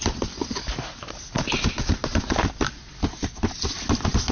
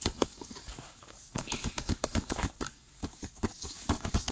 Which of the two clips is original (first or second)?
first